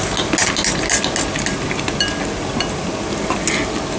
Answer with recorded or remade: recorded